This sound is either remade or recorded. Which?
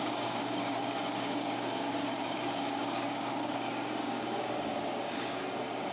remade